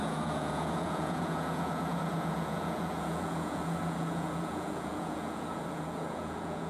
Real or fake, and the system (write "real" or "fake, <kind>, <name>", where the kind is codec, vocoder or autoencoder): fake, vocoder, Vocos